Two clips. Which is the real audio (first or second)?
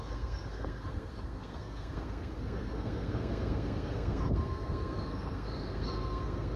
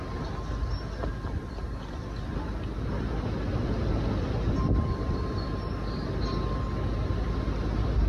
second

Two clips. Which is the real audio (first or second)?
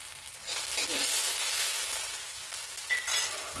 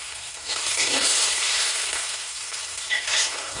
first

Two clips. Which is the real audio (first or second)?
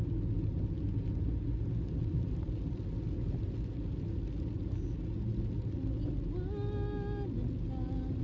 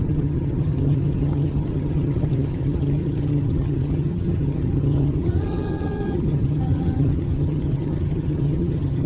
first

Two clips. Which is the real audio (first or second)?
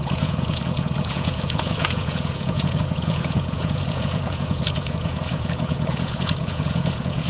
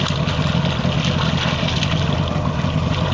second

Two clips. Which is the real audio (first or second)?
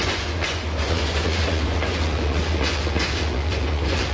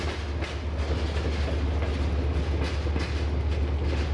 second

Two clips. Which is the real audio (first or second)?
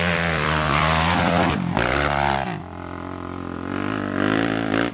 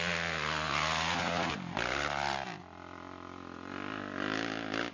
second